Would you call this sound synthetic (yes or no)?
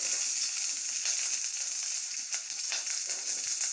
no